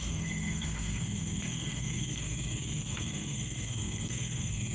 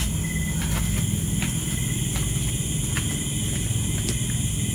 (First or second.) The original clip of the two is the second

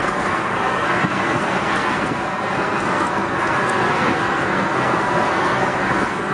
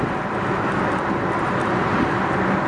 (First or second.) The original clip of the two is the second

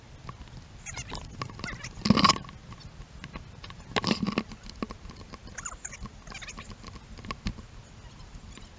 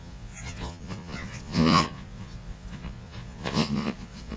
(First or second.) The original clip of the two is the first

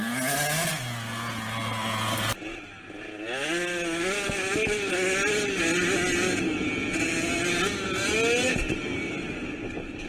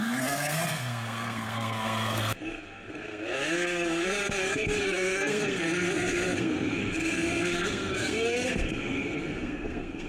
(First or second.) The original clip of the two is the first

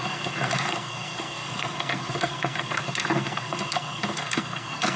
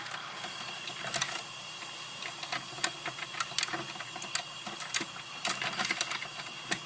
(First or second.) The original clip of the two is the second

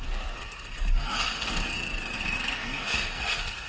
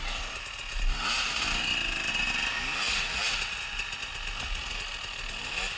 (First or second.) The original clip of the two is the second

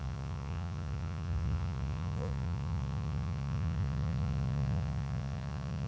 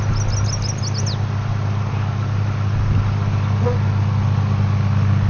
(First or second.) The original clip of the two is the second